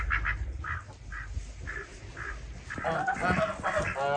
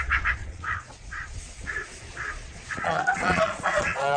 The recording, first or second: first